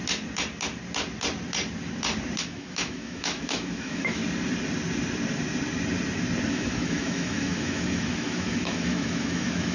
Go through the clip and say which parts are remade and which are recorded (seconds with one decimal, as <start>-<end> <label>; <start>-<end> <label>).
0.0-2.4 recorded; 2.4-4.2 remade; 4.2-6.5 recorded; 6.5-9.7 remade